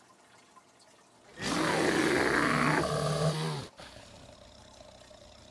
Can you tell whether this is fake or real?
real